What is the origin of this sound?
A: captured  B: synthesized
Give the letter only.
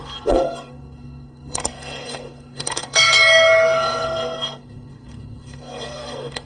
B